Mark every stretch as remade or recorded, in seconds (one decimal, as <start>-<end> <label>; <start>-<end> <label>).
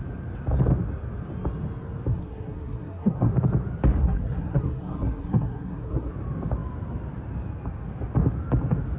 0.0-2.1 recorded; 2.1-3.3 remade; 3.3-4.0 recorded; 4.0-6.1 remade; 6.1-9.0 recorded